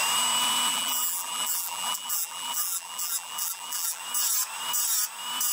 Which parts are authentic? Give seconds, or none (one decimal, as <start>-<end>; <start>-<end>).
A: 0.0-0.7; 4.0-5.5